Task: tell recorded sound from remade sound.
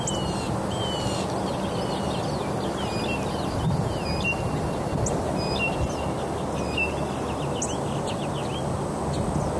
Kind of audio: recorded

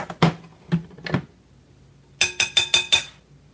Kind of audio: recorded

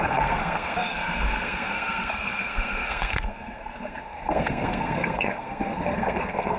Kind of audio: remade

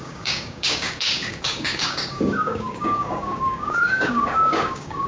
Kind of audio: remade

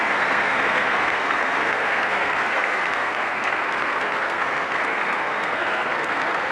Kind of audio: remade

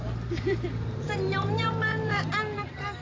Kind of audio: remade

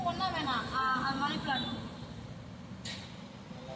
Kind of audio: recorded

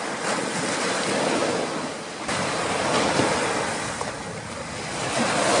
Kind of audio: recorded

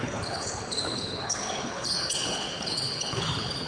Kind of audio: remade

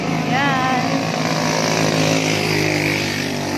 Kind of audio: recorded